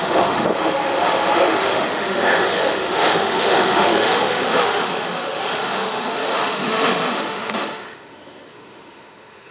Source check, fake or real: fake